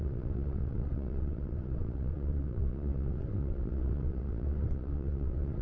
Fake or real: fake